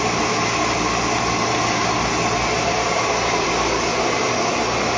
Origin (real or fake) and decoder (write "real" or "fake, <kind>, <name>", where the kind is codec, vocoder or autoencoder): real